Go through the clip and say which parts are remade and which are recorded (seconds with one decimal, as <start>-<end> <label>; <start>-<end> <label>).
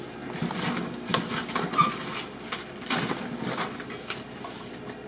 0.0-5.1 recorded